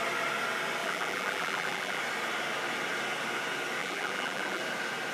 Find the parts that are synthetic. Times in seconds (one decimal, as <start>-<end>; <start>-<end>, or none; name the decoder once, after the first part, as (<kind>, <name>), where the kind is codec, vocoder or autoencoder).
0.8-2.0 (vocoder, BigVGAN v2); 3.8-4.6